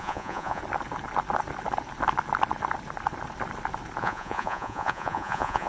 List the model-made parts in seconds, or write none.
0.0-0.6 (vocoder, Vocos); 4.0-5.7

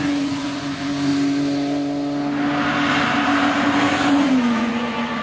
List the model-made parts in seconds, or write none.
0.0-1.1 (vocoder, Vocos); 4.1-5.2